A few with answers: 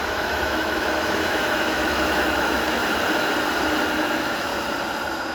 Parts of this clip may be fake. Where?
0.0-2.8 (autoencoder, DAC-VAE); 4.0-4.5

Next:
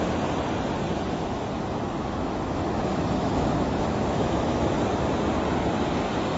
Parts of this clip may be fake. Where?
2.0-4.6 (autoencoder, DAC-VAE)

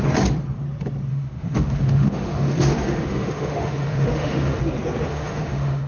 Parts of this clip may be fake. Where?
1.1-4.6 (autoencoder, DAC-VAE); 5.1-5.9